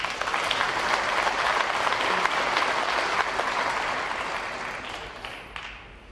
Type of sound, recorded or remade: recorded